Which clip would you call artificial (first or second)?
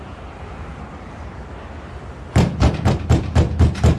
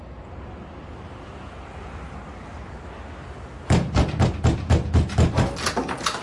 first